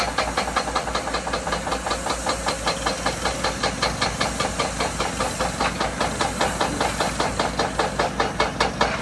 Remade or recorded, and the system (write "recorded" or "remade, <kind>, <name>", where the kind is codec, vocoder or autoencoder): recorded